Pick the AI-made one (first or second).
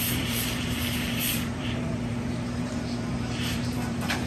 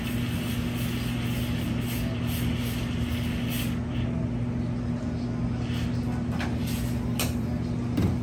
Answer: first